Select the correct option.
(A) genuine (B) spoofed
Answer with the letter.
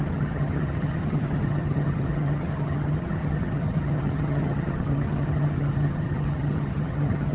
B